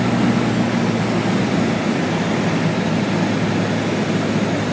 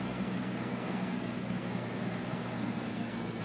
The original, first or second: first